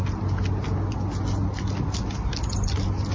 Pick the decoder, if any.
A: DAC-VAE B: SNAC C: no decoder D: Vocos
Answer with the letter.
C